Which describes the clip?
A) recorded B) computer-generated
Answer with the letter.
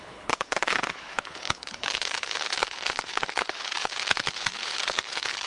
B